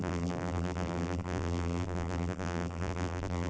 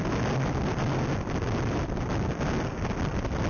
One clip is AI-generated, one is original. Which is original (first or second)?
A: second